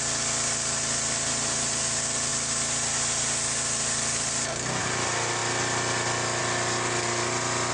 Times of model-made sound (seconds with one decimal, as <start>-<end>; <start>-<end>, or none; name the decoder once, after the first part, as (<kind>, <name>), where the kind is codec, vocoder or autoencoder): none